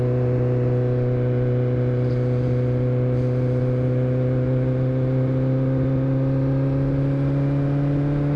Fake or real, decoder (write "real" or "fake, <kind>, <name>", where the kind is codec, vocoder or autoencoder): real